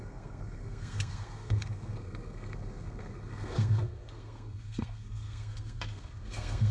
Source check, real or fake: fake